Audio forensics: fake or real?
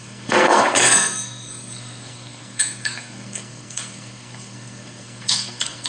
fake